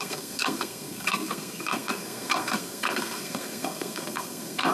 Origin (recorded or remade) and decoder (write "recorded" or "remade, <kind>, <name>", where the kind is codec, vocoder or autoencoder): remade, codec, SNAC